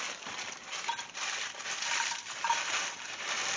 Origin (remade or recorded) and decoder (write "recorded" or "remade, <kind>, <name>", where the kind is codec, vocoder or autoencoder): recorded